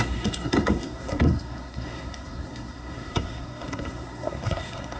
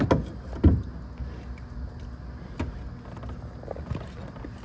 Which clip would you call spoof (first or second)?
first